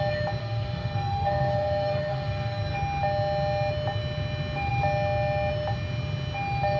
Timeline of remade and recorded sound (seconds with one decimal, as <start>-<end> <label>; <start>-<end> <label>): 0.0-0.4 recorded; 0.4-2.7 remade; 2.7-6.8 recorded